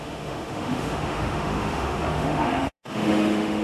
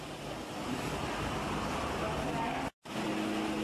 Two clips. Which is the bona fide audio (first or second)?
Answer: second